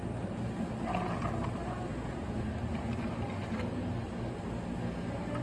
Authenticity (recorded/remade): recorded